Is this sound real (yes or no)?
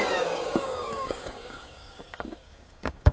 no